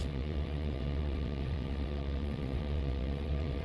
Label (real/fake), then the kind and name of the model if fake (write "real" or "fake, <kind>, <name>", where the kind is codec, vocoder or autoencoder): fake, vocoder, WaveNeXt